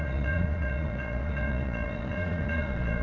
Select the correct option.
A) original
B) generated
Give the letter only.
B